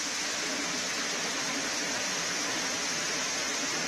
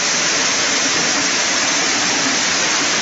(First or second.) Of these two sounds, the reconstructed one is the second